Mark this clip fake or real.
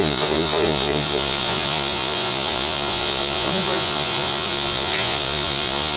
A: fake